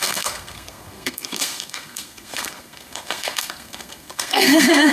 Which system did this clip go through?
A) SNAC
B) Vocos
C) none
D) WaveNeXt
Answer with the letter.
A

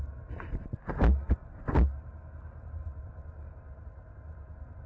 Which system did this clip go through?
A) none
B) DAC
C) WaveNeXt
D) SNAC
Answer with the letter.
A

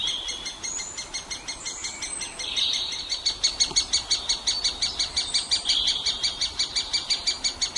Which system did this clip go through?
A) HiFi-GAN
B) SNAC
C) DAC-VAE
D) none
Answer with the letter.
D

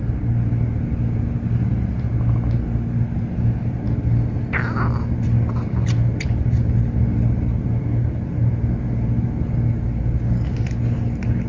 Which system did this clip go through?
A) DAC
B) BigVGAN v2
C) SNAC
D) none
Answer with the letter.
D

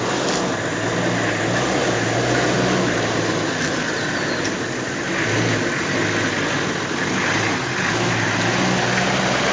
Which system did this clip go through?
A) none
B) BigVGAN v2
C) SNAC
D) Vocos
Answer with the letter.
A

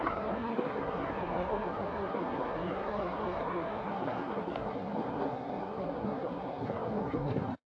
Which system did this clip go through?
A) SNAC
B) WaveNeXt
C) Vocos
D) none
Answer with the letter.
A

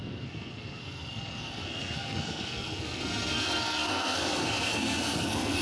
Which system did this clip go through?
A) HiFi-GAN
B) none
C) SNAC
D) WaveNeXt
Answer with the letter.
C